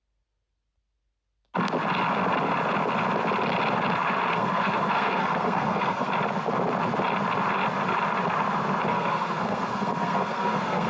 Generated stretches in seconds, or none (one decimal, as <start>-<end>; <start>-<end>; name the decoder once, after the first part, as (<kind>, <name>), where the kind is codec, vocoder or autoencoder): 4.3-6.1 (codec, SNAC); 8.9-10.9